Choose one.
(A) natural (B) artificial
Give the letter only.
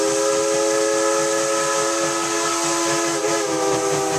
A